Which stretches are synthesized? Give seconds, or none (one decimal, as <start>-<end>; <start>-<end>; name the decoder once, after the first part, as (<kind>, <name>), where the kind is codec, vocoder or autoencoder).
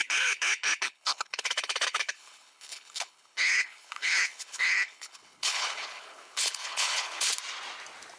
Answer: 0.0-7.3 (codec, HILCodec)